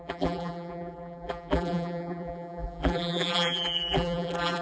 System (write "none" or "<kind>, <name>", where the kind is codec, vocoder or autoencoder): vocoder, BigVGAN v2